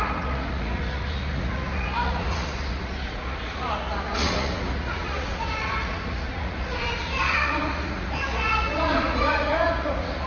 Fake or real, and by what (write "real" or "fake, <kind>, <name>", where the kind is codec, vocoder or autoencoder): fake, vocoder, Vocos